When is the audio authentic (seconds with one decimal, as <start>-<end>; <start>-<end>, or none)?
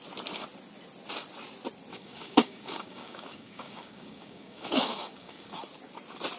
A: 0.0-1.9; 5.6-6.4